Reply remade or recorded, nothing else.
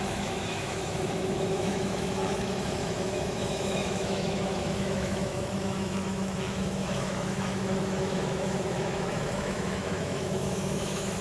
remade